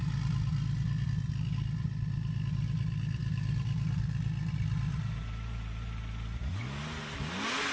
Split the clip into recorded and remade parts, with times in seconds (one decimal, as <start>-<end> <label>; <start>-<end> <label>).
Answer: 0.0-7.7 recorded

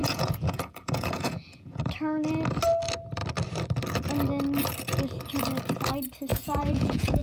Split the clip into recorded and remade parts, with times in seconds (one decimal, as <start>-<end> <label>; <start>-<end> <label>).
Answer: 0.0-1.8 remade; 1.8-6.3 recorded; 6.3-7.2 remade